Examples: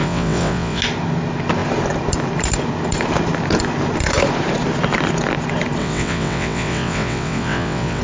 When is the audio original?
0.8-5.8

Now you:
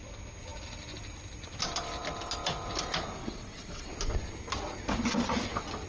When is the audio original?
0.0-3.2; 3.9-5.9